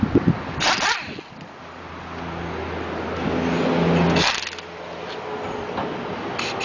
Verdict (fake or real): real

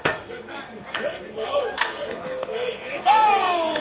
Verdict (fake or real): fake